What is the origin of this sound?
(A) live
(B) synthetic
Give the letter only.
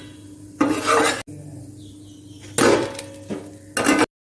A